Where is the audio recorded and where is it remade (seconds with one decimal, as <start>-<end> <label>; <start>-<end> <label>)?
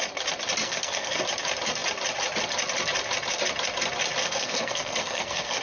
0.0-0.6 recorded; 0.6-1.2 remade; 1.2-4.2 recorded; 4.2-5.6 remade